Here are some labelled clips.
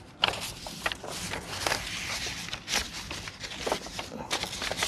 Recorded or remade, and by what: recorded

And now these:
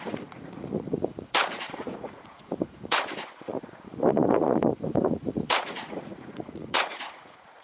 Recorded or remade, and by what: remade, vocoder, Vocos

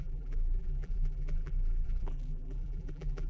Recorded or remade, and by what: remade, vocoder, BigVGAN v2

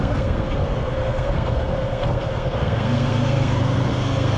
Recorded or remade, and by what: remade, codec, SNAC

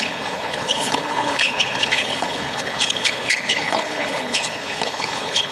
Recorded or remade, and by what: remade, codec, HILCodec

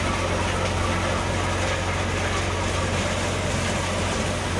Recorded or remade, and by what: recorded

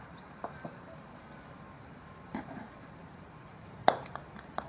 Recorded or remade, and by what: remade, vocoder, BigVGAN v2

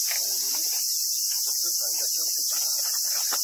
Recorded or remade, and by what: recorded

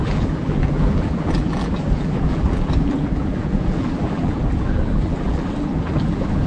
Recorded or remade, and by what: remade, vocoder, BigVGAN v2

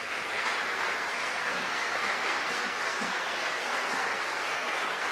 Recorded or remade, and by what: remade, codec, SNAC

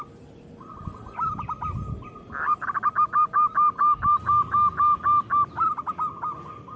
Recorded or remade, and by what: recorded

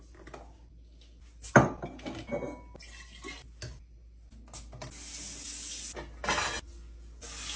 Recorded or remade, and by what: recorded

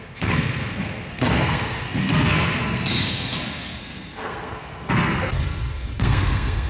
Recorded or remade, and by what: remade, codec, SNAC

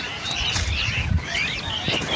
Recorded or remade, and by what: recorded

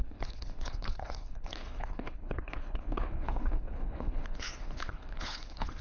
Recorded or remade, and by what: remade, codec, HILCodec